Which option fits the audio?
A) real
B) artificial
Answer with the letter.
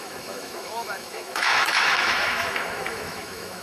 B